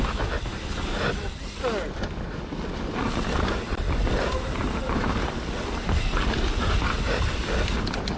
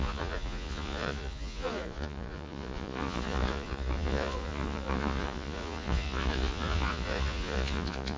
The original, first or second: first